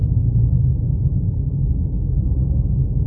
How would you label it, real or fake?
real